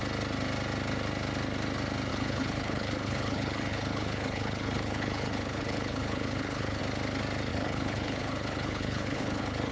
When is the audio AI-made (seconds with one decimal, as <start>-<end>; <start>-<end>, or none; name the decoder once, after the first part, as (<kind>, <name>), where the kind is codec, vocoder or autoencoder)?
2.1-6.8 (codec, HILCodec); 7.5-9.7

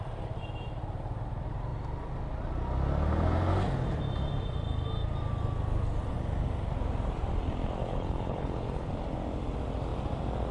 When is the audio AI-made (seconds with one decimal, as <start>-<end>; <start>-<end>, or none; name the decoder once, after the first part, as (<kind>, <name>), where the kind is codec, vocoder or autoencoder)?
7.8-8.9 (codec, HILCodec)

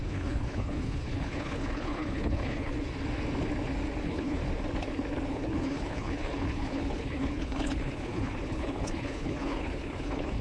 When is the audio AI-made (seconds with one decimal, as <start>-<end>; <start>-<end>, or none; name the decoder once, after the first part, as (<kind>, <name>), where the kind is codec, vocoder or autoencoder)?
0.0-2.7 (codec, HILCodec); 4.0-4.4; 5.3-10.4

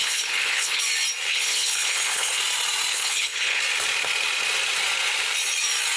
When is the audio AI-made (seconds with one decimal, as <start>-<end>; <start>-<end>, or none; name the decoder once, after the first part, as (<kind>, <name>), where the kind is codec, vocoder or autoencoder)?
0.0-0.8 (codec, HILCodec); 1.3-2.4; 2.9-3.6

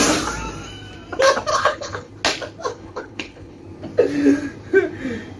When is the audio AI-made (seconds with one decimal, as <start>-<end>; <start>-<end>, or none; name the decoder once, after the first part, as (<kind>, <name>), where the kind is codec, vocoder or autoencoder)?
1.5-2.1 (codec, HILCodec); 2.7-3.6

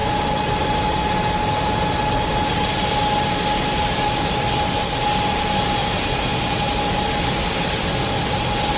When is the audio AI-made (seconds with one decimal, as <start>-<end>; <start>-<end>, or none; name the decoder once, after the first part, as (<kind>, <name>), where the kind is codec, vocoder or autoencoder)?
none

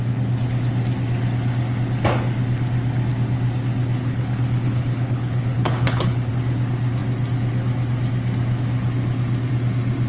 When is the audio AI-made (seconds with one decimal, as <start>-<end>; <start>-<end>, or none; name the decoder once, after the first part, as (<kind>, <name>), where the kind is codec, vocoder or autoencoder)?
4.0-6.3 (codec, HILCodec)

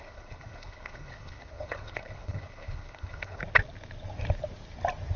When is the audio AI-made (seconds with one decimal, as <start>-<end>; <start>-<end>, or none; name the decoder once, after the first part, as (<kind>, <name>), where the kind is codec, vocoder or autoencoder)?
0.0-3.4 (codec, HILCodec)